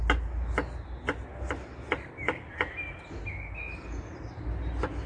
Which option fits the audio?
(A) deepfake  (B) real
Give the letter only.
B